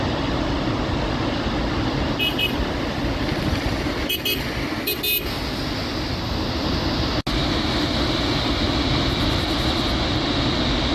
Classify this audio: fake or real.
real